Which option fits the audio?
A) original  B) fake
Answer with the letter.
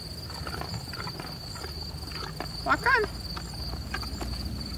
A